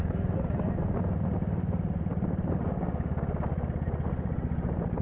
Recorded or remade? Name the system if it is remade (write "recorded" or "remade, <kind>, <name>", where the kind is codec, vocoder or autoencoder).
recorded